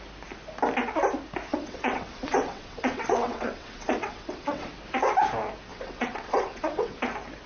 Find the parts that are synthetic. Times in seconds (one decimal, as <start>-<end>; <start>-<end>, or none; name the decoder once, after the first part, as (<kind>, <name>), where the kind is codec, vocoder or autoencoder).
1.5-4.7 (vocoder, WaveNeXt); 5.7-7.0